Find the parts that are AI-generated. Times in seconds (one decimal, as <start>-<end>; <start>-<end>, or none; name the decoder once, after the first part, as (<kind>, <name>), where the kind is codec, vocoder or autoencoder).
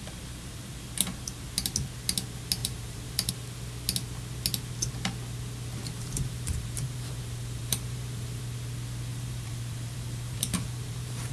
2.6-3.3 (vocoder, BigVGAN v2); 5.8-8.4; 9.1-11.3